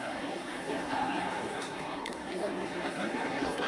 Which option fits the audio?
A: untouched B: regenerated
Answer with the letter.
B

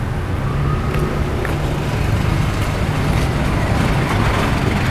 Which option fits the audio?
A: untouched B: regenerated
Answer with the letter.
A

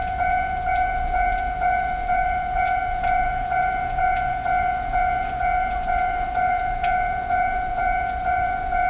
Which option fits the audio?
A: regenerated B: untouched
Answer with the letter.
A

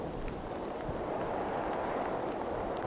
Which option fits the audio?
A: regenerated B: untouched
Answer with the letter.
B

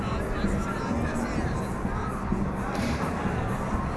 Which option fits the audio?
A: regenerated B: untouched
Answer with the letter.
B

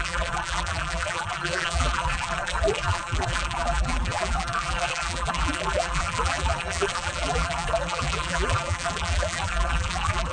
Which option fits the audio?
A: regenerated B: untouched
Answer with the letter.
A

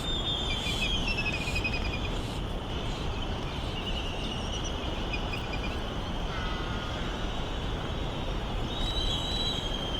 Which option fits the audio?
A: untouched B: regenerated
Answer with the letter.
B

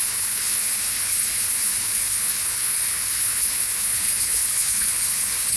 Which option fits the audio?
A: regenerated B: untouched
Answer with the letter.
A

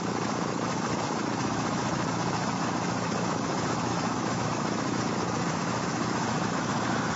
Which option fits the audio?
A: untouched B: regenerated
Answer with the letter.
B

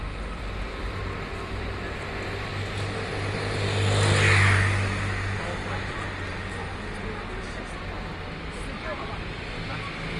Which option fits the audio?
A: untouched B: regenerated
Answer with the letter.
A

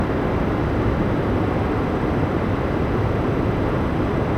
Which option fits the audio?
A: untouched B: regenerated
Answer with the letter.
A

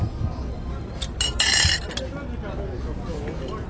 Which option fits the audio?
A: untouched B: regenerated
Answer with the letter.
A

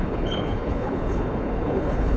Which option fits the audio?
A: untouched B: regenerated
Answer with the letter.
B